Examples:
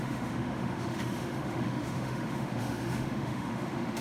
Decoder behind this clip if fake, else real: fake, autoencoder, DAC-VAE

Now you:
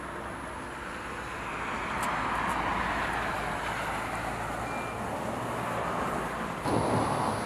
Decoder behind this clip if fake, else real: real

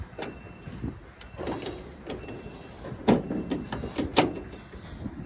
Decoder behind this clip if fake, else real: real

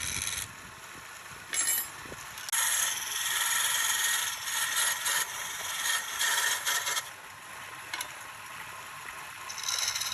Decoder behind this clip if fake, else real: real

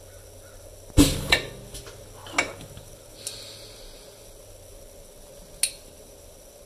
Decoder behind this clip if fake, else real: real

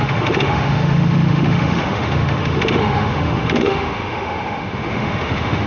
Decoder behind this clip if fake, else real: fake, autoencoder, DAC-VAE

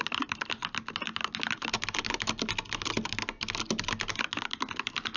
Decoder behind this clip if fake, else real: real